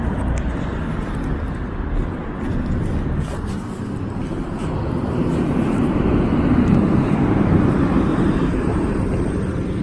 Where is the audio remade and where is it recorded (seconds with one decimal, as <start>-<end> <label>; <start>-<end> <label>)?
0.0-0.7 remade; 0.7-4.4 recorded; 4.4-9.8 remade